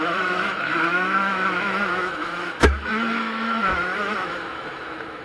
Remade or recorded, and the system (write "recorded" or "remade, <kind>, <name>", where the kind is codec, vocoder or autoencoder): remade, autoencoder, DAC-VAE